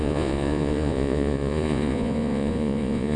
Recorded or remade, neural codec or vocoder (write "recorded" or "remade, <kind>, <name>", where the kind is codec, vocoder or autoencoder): remade, vocoder, Vocos